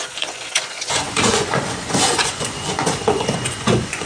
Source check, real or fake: fake